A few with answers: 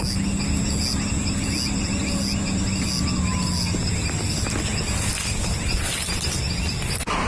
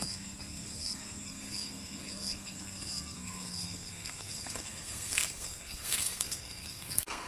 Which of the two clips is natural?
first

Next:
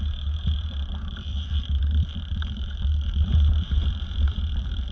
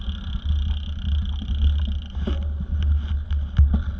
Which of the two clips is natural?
second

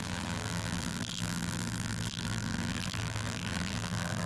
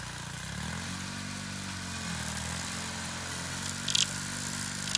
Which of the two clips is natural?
second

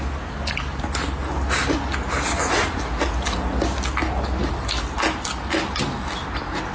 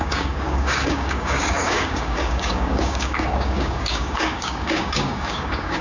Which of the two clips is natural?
first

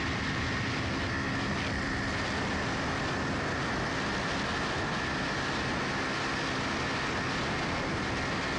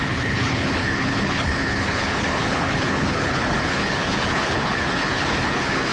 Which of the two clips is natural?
first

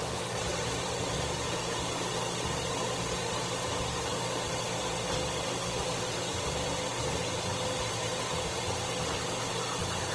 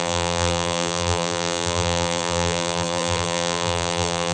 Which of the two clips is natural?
first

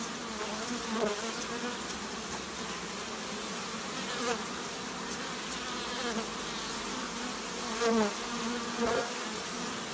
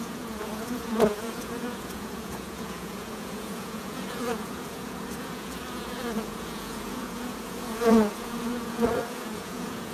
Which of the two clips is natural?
first